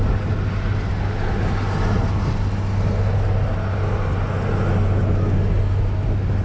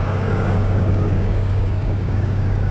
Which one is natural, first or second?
first